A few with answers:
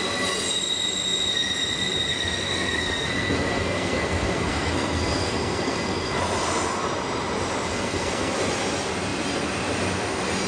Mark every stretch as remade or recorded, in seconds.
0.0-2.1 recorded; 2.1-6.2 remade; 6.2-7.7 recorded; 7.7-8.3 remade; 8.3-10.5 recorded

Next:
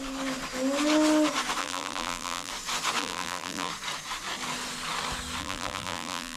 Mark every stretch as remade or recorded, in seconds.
0.0-1.6 recorded; 1.6-2.5 remade; 2.5-3.0 recorded; 3.0-3.7 remade; 3.7-5.4 recorded; 5.4-6.4 remade

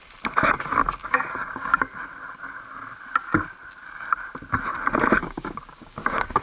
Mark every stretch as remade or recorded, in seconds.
0.0-1.0 recorded; 1.0-2.0 remade; 2.0-5.2 recorded; 5.2-6.4 remade

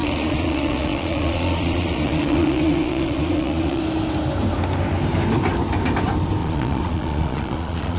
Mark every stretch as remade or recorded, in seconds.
0.0-3.8 remade; 3.8-6.4 recorded; 6.4-8.0 remade

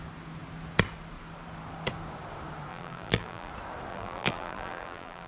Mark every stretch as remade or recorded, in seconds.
0.0-2.7 recorded; 2.7-3.5 remade; 3.5-3.9 recorded; 3.9-5.3 remade

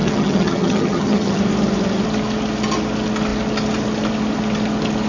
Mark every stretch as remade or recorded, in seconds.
0.0-1.4 remade; 1.4-5.1 recorded

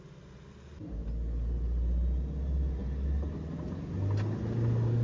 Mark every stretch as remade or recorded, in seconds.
0.0-5.0 recorded

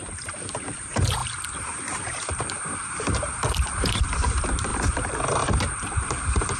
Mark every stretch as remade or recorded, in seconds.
0.0-6.6 remade